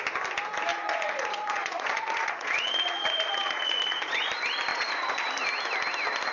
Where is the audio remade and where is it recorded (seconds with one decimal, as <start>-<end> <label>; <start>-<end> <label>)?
0.0-0.7 recorded; 0.7-4.3 remade; 4.3-4.7 recorded; 4.7-5.3 remade; 5.3-6.3 recorded